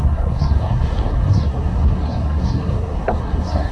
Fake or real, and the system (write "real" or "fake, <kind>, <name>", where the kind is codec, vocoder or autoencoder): fake, codec, SNAC